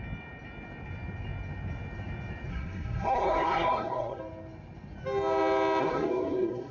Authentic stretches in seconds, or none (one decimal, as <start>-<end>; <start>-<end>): 0.0-2.5; 4.2-5.8